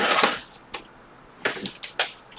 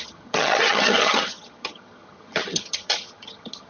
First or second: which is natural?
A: first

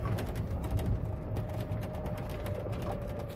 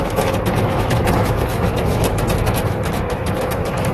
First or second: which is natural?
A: first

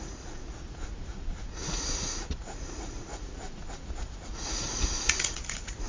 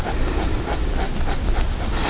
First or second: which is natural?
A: second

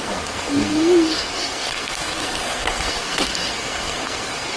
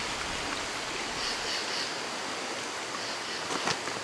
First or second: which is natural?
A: second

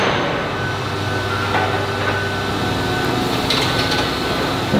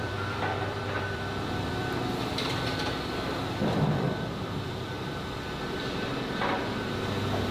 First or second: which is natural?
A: first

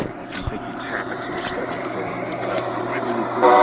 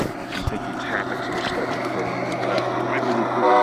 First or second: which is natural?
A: second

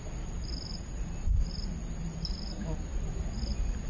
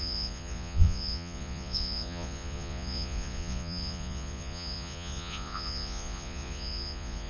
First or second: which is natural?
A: first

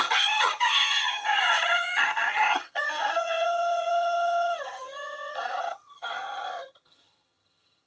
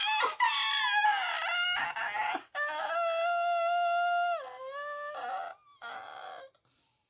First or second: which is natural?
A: second